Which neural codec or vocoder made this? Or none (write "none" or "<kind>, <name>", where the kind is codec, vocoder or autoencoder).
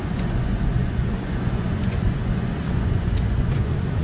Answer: vocoder, Vocos